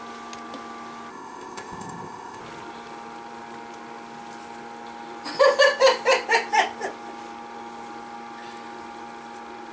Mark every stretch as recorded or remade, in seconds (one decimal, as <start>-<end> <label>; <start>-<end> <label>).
0.0-1.1 recorded; 1.1-2.4 remade; 2.4-9.7 recorded